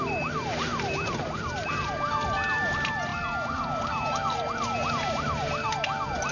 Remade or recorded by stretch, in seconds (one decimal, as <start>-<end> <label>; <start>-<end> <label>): 0.0-3.1 remade; 3.1-4.9 recorded; 4.9-6.3 remade